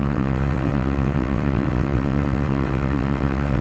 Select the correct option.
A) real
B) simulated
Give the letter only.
B